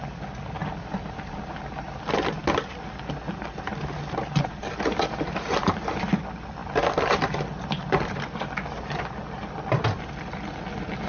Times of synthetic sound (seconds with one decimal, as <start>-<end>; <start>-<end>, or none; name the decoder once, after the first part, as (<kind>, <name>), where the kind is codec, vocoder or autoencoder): none